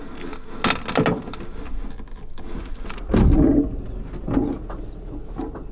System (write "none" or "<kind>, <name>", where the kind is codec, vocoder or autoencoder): none